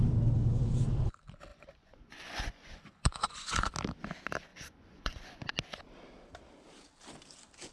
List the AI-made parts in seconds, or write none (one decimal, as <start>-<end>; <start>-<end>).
1.5-3.7; 4.5-5.5